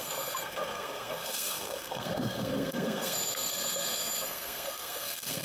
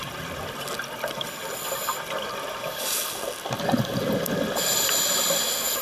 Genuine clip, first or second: second